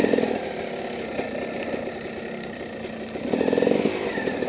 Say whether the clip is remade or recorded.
recorded